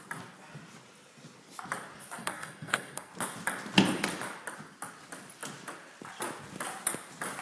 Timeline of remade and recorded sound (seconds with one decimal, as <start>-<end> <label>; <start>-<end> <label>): 0.0-2.2 recorded; 2.2-3.1 remade; 3.1-7.4 recorded